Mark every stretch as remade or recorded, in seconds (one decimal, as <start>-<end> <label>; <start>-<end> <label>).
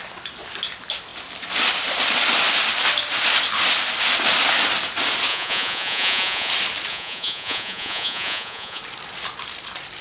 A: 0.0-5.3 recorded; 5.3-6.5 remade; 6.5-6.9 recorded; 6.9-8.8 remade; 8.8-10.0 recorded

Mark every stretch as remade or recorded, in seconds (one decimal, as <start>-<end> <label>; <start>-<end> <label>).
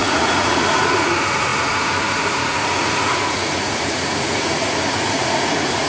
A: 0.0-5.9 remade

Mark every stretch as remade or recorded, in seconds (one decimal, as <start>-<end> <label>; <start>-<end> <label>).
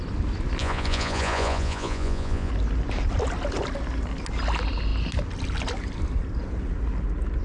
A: 0.0-0.6 recorded; 0.6-2.5 remade; 2.5-7.4 recorded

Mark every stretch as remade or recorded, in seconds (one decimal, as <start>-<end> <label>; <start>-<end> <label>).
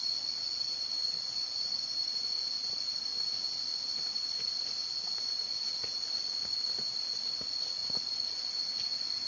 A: 0.0-1.8 remade; 1.8-7.8 recorded; 7.8-8.3 remade; 8.3-9.3 recorded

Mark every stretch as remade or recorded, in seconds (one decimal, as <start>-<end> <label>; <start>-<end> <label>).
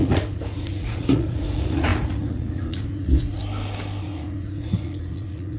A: 0.0-3.4 remade; 3.4-4.0 recorded; 4.0-5.6 remade